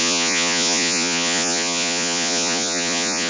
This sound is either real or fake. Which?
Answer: fake